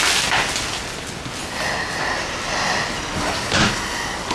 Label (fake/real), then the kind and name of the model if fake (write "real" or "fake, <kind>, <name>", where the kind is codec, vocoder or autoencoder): real